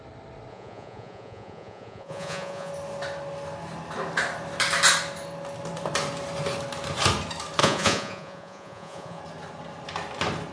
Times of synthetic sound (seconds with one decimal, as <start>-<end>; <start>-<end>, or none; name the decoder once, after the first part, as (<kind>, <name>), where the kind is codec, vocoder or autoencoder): 0.5-2.7 (vocoder, Vocos); 7.6-9.2